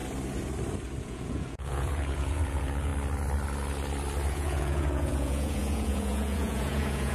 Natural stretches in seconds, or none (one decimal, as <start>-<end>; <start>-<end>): 0.0-1.0; 2.9-4.3